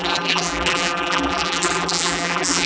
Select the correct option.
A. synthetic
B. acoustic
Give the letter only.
A